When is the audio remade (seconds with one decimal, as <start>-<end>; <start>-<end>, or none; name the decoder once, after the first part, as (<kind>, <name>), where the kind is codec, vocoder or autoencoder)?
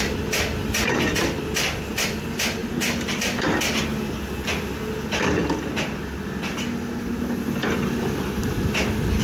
none